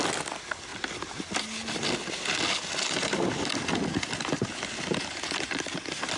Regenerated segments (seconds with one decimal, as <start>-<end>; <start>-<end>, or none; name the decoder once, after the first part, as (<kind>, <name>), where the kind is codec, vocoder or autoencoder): none